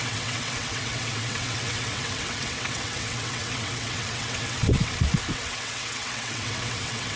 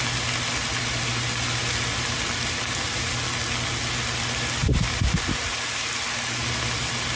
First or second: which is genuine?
second